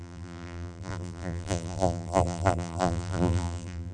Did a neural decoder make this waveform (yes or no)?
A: yes